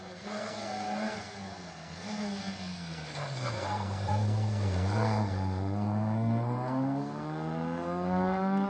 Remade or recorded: remade